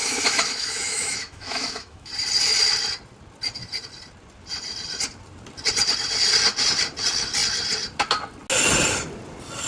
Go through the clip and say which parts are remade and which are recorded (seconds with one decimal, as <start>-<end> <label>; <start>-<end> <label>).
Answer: 0.0-2.1 remade; 2.1-9.7 recorded